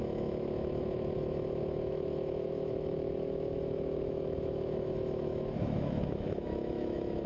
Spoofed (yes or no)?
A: yes